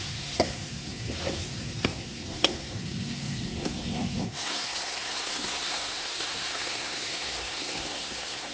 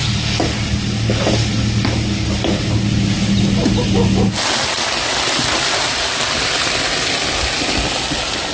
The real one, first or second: second